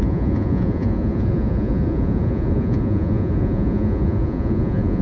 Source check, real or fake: fake